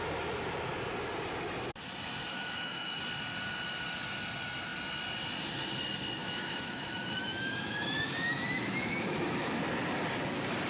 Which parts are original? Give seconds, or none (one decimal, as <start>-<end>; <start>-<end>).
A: 0.0-2.3; 3.0-6.2; 9.6-10.7